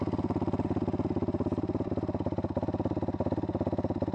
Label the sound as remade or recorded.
recorded